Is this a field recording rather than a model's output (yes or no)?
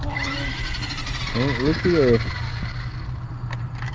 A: yes